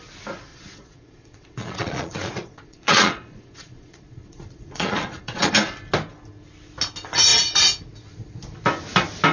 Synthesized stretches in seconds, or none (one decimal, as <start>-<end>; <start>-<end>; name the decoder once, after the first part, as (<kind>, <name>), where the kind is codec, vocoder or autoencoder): 0.5-5.5 (vocoder, Vocos)